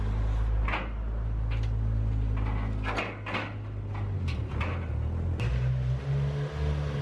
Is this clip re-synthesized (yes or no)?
no